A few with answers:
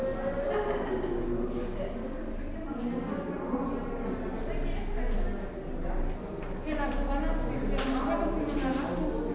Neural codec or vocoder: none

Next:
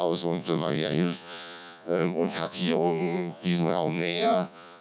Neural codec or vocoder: vocoder, Vocos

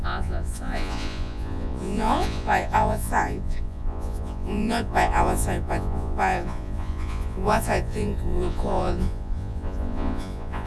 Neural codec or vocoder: vocoder, Vocos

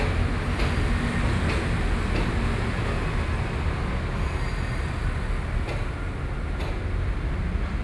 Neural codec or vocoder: none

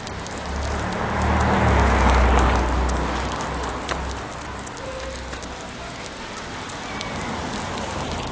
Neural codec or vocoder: none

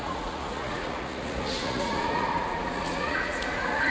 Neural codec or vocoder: vocoder, Vocos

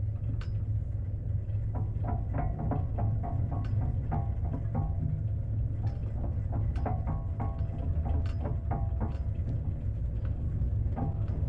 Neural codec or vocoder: none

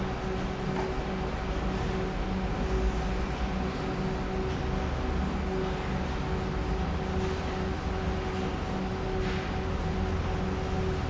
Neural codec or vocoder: none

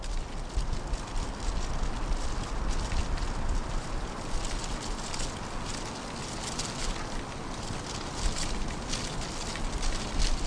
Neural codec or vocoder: none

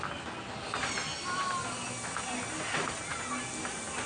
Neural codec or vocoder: none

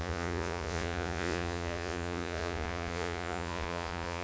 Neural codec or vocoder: vocoder, Vocos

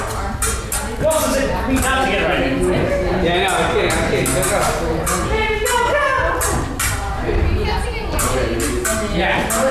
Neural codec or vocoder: none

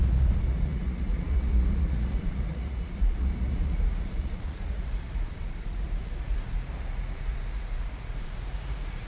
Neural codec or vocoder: vocoder, Vocos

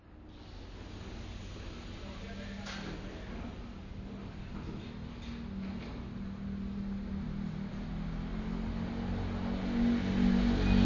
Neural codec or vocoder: none